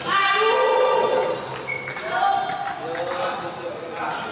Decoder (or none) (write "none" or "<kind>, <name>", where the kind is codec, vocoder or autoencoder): none